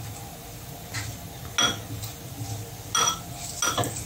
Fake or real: real